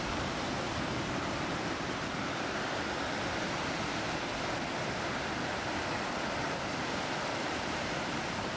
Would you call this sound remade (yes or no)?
yes